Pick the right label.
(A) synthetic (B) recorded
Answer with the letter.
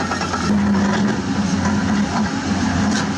B